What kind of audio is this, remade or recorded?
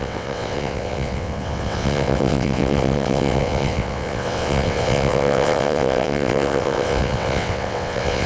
remade